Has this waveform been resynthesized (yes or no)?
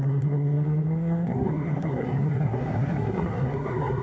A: yes